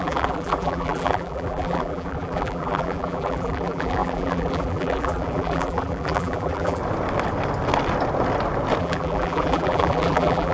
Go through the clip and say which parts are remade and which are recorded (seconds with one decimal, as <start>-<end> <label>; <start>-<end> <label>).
0.0-6.8 remade; 6.8-8.8 recorded; 8.8-10.5 remade